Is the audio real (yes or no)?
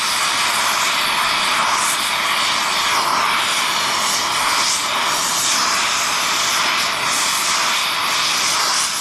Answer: yes